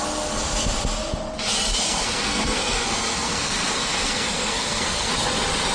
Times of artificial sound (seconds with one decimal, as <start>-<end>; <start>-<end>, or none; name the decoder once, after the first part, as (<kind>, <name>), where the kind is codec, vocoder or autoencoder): 1.7-5.1 (codec, SNAC)

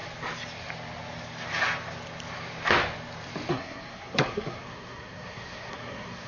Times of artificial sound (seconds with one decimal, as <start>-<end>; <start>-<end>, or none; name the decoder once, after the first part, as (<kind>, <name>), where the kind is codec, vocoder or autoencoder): 3.5-6.3 (codec, SNAC)

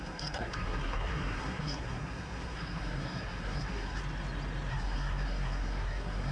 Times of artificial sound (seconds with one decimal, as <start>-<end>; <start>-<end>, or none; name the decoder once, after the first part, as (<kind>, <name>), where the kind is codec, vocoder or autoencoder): 0.0-4.0 (codec, SNAC); 4.7-6.3